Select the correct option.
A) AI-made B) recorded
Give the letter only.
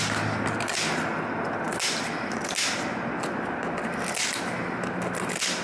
B